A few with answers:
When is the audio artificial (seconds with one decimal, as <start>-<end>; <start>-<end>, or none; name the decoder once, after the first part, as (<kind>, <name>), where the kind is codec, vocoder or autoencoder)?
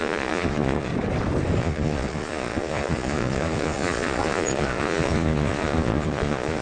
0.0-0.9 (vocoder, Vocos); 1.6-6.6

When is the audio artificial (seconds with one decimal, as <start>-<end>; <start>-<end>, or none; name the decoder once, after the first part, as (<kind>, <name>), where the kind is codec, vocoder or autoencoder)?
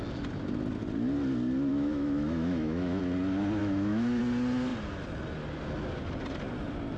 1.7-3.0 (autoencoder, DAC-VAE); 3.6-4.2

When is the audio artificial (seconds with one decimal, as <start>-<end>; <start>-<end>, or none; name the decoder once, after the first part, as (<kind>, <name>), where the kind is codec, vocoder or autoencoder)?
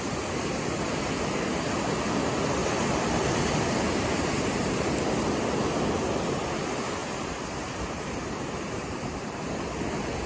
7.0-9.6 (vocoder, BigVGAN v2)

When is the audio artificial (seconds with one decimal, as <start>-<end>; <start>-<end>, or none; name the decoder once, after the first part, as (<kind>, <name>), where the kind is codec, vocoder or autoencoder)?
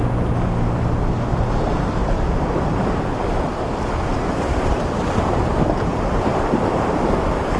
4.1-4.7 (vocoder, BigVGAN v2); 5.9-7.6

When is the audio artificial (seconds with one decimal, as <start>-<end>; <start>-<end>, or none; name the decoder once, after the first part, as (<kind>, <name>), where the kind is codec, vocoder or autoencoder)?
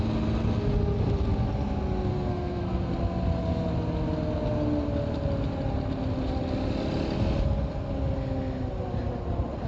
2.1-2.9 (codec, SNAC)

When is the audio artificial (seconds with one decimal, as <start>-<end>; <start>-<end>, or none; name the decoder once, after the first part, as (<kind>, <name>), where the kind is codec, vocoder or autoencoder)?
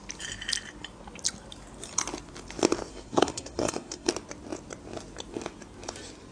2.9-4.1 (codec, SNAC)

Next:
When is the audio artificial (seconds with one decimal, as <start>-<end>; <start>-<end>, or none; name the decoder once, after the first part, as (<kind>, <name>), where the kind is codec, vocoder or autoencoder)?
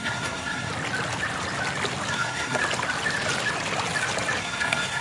0.0-0.7 (codec, SNAC); 2.1-2.6; 4.4-5.0